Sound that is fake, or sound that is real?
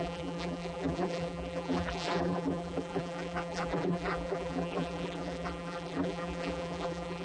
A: fake